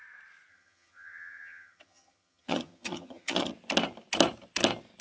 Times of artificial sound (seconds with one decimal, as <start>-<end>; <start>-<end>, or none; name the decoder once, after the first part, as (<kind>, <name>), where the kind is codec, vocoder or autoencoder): 0.5-3.5 (vocoder, HiFi-GAN)